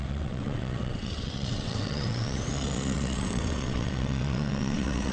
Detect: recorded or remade remade